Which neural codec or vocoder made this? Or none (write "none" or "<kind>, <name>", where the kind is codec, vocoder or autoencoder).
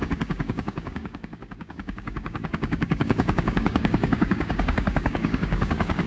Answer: codec, DAC